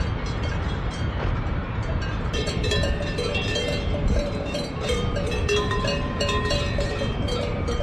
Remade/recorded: remade